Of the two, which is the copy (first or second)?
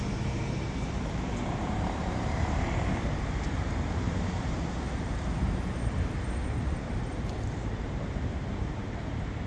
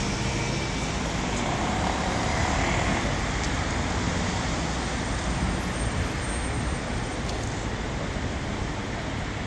first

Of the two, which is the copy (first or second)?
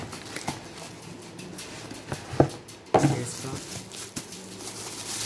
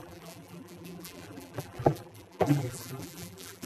second